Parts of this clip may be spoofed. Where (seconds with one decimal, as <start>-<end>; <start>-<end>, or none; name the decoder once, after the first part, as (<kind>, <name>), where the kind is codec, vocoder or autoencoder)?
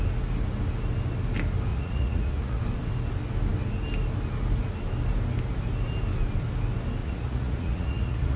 1.7-2.6 (vocoder, Vocos); 7.0-8.4